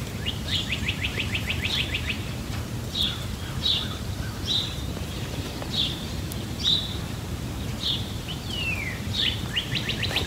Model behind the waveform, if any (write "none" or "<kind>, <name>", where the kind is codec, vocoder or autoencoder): vocoder, BigVGAN v2